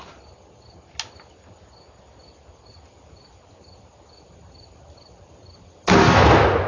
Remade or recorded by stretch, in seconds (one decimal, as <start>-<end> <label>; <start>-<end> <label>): 0.0-6.7 recorded